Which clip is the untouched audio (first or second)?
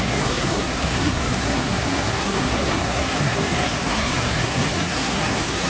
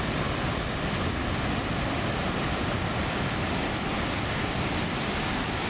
second